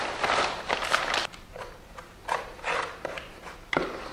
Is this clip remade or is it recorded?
recorded